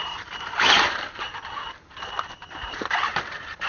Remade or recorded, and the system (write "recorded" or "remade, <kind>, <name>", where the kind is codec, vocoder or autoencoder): remade, vocoder, BigVGAN v2